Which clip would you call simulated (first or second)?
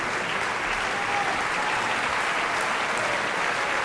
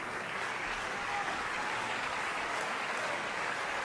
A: second